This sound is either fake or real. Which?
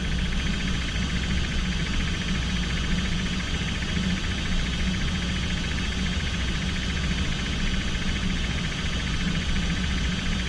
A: fake